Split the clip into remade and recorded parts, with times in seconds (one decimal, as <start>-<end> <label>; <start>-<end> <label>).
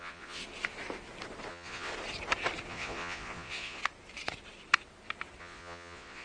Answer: 0.0-0.4 remade; 0.4-1.5 recorded; 1.5-1.9 remade; 1.9-2.7 recorded; 2.7-3.8 remade; 3.8-5.4 recorded; 5.4-6.2 remade